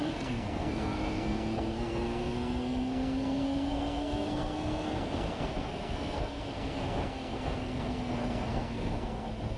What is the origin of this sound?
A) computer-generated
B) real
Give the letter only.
A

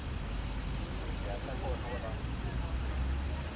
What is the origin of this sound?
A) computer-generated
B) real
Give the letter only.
B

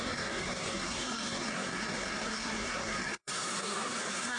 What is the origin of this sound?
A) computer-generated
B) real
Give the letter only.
A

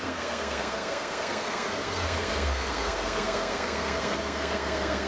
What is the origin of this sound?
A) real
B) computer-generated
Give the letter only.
B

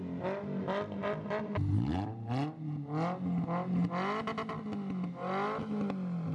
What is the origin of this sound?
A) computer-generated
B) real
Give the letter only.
B